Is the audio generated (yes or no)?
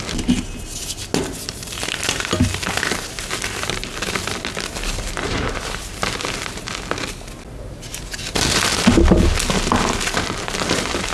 no